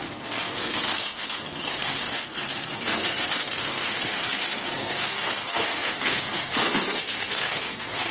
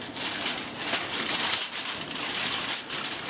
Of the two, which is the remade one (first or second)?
first